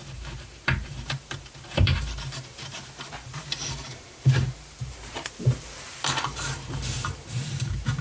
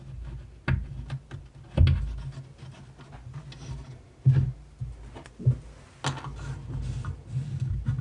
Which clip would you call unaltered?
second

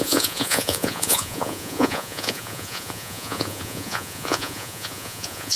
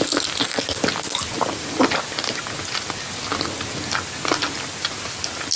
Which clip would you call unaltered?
second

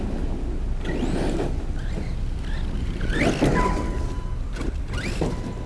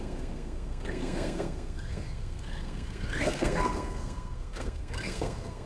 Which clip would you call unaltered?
first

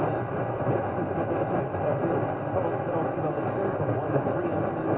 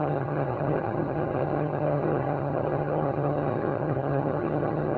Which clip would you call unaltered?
first